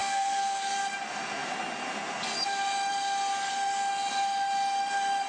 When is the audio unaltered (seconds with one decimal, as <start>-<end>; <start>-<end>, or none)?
0.6-5.3